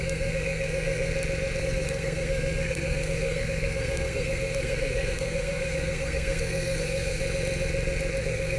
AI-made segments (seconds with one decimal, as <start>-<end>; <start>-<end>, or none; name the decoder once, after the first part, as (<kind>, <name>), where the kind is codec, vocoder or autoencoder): 0.0-1.1 (codec, SNAC); 1.6-7.2; 8.2-8.6